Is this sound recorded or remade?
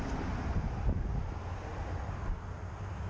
recorded